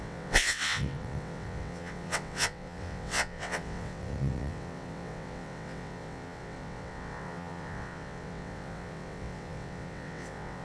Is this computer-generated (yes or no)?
yes